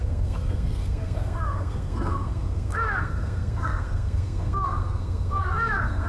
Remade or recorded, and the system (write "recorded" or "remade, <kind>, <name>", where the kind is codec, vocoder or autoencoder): remade, codec, SNAC